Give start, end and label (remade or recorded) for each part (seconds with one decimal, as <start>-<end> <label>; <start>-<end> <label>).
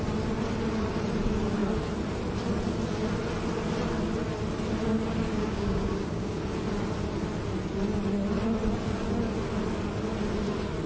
0.0-5.3 recorded; 5.3-6.4 remade; 6.4-10.9 recorded